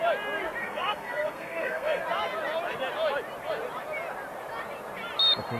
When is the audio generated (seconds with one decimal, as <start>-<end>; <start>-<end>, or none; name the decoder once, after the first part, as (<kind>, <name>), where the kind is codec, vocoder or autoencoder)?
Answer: 0.6-2.0 (codec, SNAC)